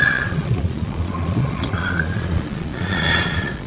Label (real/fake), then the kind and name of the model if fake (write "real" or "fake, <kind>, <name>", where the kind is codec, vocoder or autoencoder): fake, vocoder, Vocos